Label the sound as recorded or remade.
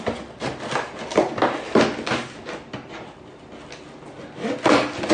recorded